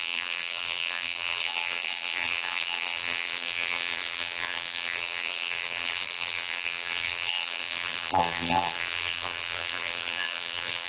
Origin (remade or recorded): remade